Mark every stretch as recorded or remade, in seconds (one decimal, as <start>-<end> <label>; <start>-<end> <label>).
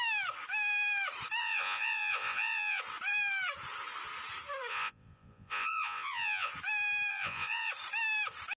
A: 0.0-1.4 recorded; 1.4-2.8 remade; 2.8-4.7 recorded; 4.7-6.5 remade; 6.5-7.1 recorded; 7.1-7.7 remade; 7.7-8.6 recorded